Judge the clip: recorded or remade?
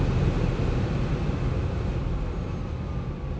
recorded